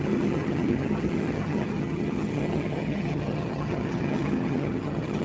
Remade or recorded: remade